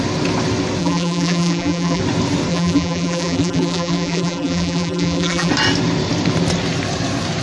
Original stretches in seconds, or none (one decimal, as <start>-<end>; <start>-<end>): 0.0-0.8; 2.0-2.5; 5.5-7.4